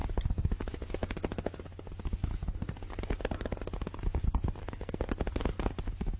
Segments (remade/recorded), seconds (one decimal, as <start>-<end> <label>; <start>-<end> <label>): 0.0-4.6 recorded; 4.6-5.1 remade; 5.1-6.2 recorded